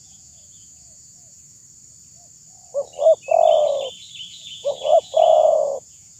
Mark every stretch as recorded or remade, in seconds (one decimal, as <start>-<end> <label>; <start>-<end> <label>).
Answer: 0.0-1.6 remade; 1.6-4.3 recorded; 4.3-6.2 remade